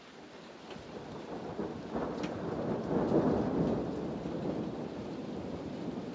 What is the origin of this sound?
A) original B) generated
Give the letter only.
A